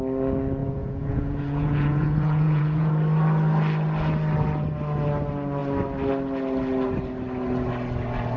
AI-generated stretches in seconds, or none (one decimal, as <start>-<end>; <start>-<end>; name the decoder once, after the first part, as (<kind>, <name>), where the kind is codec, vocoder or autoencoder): 0.6-2.9 (vocoder, Vocos)